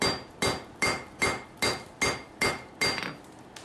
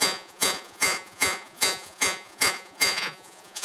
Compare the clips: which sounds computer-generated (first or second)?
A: second